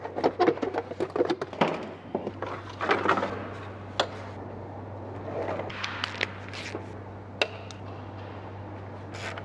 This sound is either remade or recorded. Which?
recorded